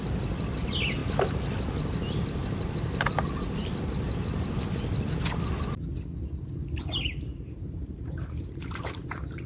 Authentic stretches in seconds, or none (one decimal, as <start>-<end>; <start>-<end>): 0.0-7.3; 9.0-9.5